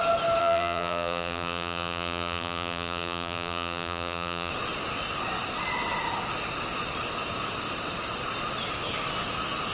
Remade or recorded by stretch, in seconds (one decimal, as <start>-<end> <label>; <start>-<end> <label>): 0.0-0.4 recorded; 0.4-4.5 remade; 4.5-9.7 recorded